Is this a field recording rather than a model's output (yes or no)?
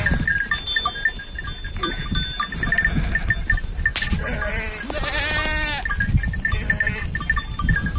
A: yes